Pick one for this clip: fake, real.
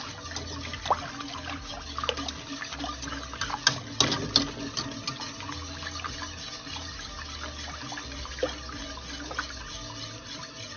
real